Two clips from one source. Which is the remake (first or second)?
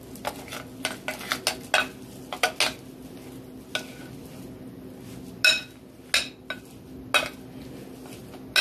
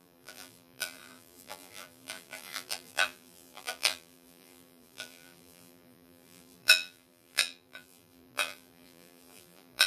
second